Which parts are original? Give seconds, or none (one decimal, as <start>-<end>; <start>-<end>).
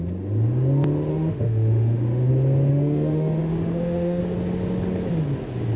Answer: 0.0-1.1; 2.3-2.7; 4.2-5.8